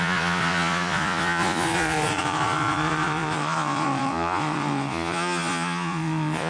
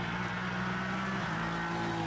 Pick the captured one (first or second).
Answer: second